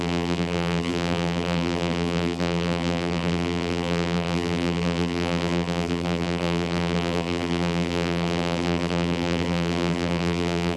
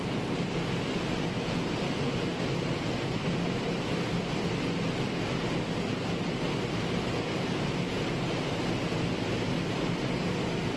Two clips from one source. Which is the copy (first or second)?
first